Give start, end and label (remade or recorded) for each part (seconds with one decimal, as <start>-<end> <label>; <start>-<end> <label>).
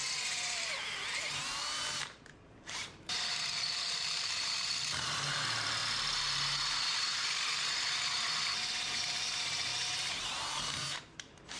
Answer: 0.0-1.3 recorded; 1.3-5.8 remade; 5.8-9.0 recorded; 9.0-9.7 remade; 9.7-10.6 recorded; 10.6-11.6 remade